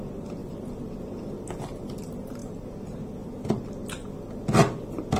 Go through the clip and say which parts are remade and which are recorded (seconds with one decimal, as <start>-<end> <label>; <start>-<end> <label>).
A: 0.0-0.4 remade; 0.4-2.0 recorded; 2.0-2.4 remade; 2.4-5.2 recorded